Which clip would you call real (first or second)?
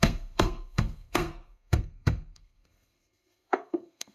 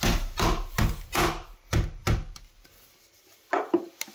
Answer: second